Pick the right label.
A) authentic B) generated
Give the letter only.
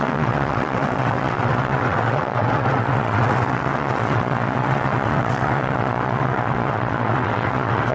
B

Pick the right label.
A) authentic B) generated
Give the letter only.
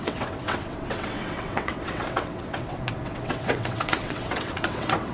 B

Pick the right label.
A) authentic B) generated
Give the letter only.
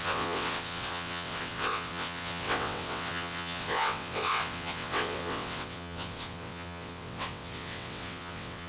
B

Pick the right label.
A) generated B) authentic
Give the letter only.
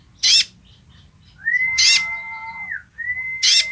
B